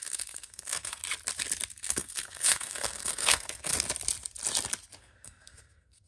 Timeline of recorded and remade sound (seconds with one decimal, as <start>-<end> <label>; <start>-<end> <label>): 0.0-1.0 remade; 1.0-1.7 recorded; 1.7-3.7 remade; 3.7-5.0 recorded; 5.0-6.1 remade